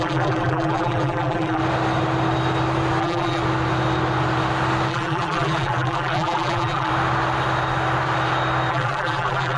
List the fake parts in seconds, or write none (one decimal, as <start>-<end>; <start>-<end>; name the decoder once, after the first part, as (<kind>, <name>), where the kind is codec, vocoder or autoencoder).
0.0-1.6 (vocoder, BigVGAN v2); 3.0-3.4; 4.9-6.9; 8.7-9.6